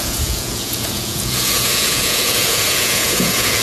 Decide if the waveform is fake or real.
fake